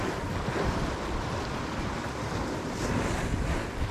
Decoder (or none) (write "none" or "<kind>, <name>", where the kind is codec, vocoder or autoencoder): none